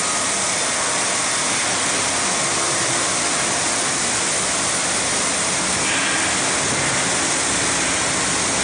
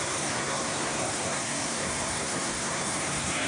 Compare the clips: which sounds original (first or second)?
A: first